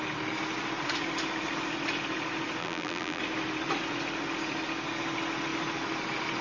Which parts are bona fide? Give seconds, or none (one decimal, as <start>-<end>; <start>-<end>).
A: 0.0-2.6; 3.2-6.4